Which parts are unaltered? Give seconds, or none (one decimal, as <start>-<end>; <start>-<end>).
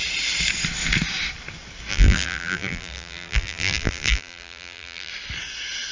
0.0-1.9; 5.1-5.9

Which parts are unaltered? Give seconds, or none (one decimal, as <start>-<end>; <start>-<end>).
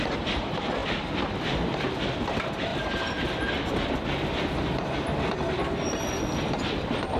2.7-7.2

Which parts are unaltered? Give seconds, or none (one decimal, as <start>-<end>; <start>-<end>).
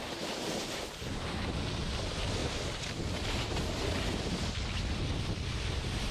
0.0-6.1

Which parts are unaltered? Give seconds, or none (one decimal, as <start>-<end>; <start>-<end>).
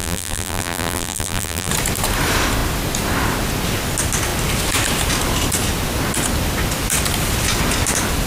1.7-8.3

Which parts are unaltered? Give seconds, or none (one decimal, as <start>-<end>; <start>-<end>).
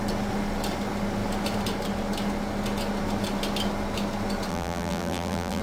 0.0-4.5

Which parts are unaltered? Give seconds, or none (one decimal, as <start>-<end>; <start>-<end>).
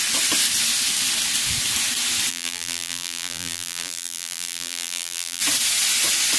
0.0-2.3; 5.4-6.4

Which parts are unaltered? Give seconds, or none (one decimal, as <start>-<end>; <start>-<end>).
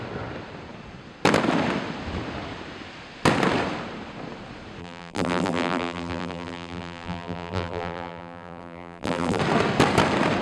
0.0-4.8; 9.4-10.4